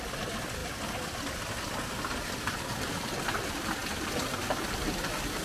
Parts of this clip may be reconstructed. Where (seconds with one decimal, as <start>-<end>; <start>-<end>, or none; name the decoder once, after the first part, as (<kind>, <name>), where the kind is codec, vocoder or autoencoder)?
0.0-0.6 (vocoder, BigVGAN v2); 2.9-3.8; 4.7-5.4